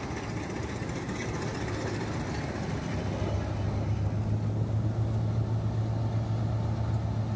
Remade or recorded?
recorded